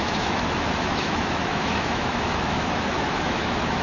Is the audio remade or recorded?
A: remade